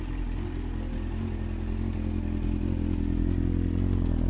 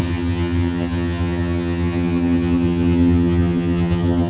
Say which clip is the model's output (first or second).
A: second